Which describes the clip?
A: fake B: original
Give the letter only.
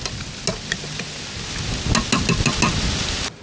B